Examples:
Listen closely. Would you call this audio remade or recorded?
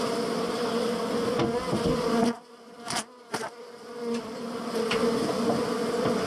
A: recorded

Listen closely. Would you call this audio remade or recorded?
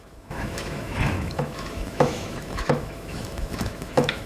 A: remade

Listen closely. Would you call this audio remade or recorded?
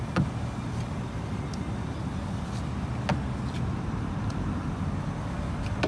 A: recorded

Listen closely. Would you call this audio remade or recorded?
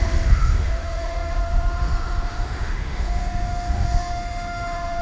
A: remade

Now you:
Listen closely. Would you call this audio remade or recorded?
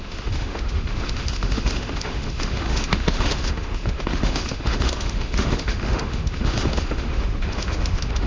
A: remade